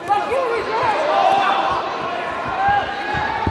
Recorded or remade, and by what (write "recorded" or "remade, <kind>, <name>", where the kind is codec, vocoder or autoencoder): recorded